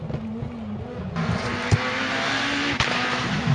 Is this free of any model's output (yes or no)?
yes